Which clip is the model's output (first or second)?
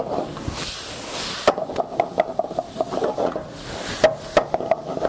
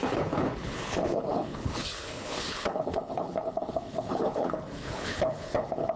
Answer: second